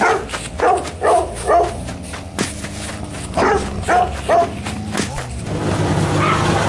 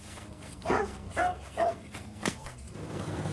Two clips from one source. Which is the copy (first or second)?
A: second